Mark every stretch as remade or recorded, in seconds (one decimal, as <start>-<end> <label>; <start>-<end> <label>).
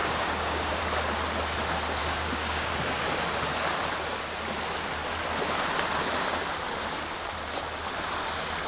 0.0-0.8 remade; 0.8-2.0 recorded; 2.0-2.7 remade; 2.7-8.7 recorded